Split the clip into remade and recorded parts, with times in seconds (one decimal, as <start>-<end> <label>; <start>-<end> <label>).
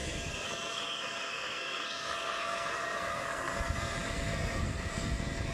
0.0-5.5 remade